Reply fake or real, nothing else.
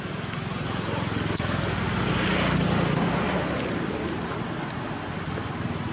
real